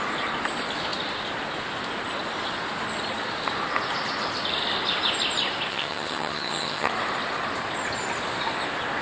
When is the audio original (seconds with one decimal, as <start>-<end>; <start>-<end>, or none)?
0.0-5.7; 6.9-9.0

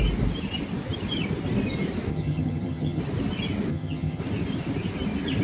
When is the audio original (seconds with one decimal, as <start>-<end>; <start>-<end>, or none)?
0.0-2.1; 3.0-3.7; 4.2-5.4

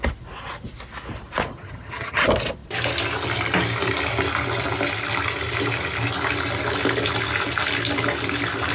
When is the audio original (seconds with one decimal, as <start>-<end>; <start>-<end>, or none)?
0.0-1.5; 2.2-8.7

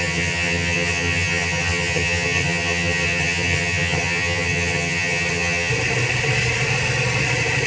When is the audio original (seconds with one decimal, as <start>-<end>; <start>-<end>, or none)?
5.7-7.7

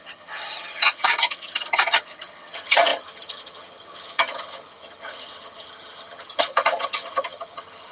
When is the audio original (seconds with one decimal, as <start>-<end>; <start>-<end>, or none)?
none